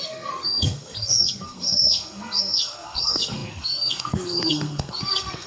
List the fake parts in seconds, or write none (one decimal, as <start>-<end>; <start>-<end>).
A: 0.0-5.5

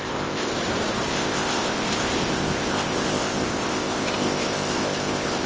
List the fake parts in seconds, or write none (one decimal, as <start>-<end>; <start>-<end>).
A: 0.0-0.5; 1.1-5.5